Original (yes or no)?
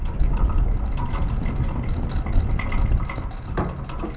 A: yes